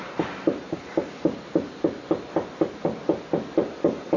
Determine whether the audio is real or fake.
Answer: real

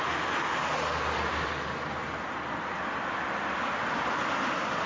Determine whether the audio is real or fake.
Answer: real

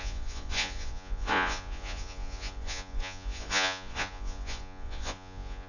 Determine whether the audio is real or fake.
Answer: fake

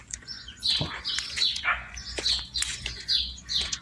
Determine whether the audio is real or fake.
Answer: fake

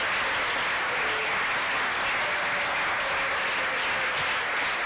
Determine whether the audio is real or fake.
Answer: real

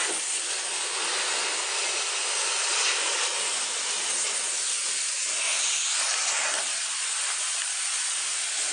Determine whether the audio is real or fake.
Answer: real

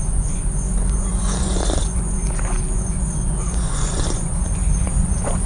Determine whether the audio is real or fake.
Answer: fake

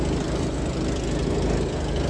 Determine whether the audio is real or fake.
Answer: real